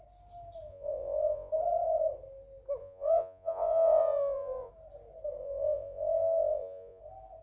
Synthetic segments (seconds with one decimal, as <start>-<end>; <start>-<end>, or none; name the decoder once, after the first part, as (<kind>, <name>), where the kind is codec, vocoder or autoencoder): 0.7-1.5 (vocoder, Vocos); 2.8-4.7; 5.4-7.0